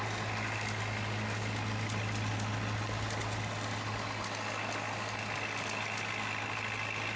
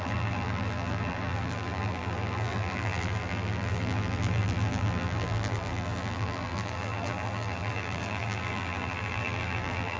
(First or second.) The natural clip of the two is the first